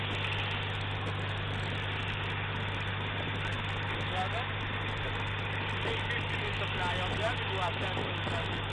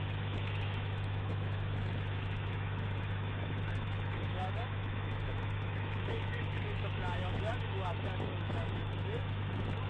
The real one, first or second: first